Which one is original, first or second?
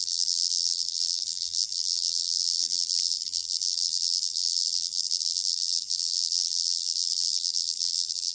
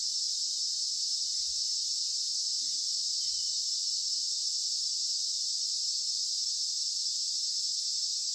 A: second